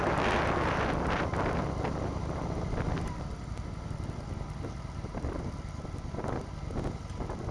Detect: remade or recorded recorded